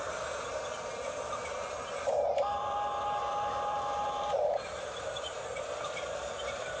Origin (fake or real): fake